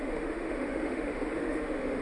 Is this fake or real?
fake